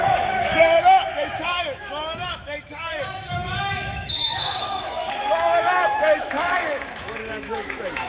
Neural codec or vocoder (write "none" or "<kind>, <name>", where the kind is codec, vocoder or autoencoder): autoencoder, DAC-VAE